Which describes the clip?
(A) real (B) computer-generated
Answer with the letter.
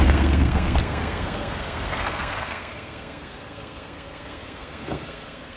B